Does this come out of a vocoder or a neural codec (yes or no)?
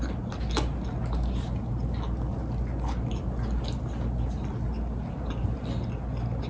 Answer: no